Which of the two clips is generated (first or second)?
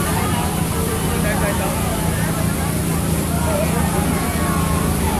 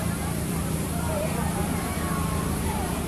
second